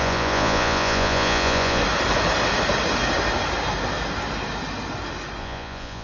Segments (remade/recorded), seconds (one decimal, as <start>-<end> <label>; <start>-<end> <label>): 0.0-1.8 remade; 1.8-5.4 recorded; 5.4-6.0 remade